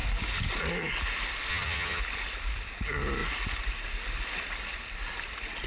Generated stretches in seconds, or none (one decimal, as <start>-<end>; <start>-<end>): 1.5-2.0